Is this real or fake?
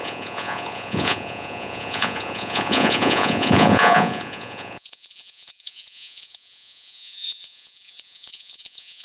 fake